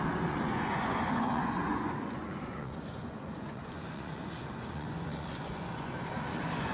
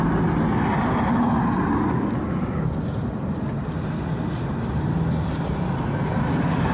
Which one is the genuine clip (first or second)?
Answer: second